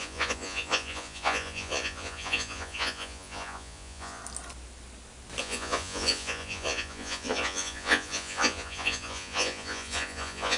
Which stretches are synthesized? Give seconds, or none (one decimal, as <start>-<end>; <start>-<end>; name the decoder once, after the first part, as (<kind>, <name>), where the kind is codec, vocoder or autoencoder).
0.0-4.2 (vocoder, Vocos); 5.4-10.6